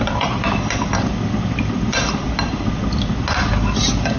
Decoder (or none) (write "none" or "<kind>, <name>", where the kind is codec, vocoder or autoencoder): none